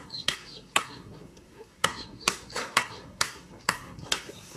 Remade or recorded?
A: remade